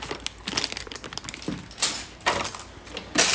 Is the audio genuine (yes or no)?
yes